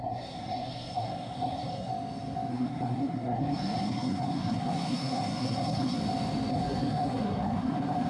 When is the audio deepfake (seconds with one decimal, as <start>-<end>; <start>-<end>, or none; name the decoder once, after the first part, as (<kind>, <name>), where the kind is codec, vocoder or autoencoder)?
0.0-1.9 (codec, SNAC); 2.5-6.0; 6.5-8.1